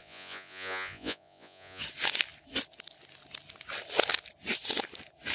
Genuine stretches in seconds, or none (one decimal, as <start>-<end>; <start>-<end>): 1.8-5.3